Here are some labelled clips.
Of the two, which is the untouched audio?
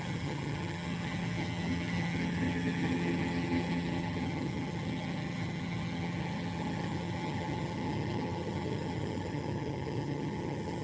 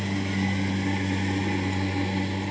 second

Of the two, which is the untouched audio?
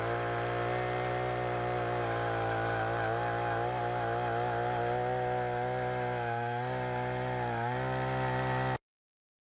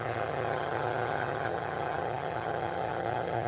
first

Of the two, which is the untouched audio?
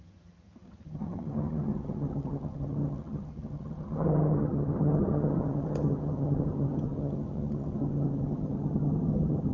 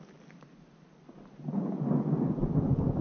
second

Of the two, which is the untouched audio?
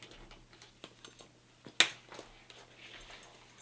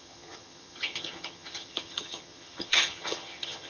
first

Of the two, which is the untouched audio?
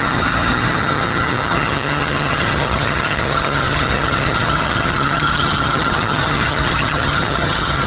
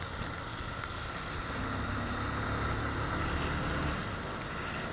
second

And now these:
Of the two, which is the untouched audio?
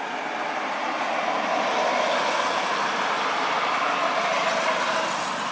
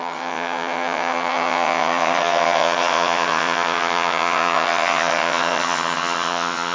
first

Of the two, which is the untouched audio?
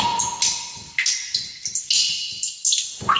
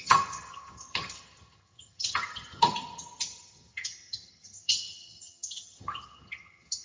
first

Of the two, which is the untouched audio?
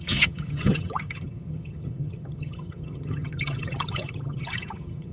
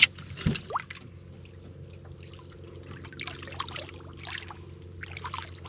second